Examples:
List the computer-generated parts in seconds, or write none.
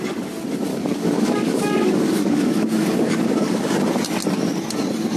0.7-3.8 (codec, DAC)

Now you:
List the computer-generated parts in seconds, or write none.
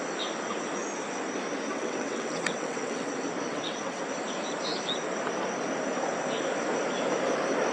1.7-3.1 (vocoder, WaveNeXt); 3.5-4.0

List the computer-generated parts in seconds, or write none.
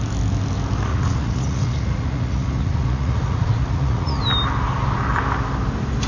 0.9-4.2 (vocoder, Vocos)